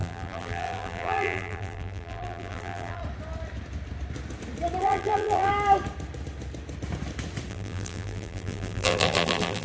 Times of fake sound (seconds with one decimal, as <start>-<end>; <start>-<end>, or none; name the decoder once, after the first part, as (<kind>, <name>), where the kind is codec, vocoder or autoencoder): 0.0-3.0 (vocoder, BigVGAN v2); 4.8-5.5; 7.5-9.6